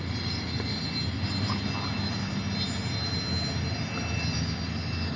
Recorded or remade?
recorded